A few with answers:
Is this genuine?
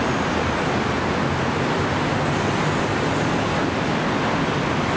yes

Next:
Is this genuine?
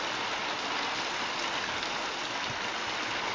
yes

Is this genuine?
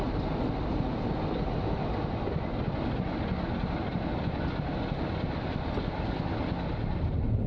yes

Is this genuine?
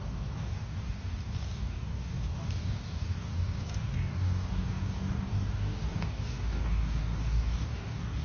no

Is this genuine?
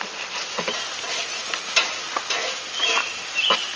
yes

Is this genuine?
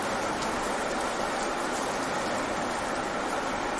yes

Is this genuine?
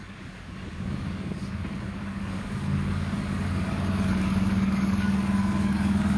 no